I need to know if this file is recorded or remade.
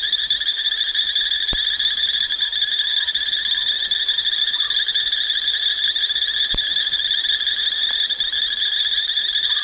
recorded